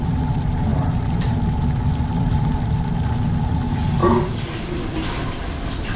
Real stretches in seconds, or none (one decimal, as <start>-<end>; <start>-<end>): 0.0-6.0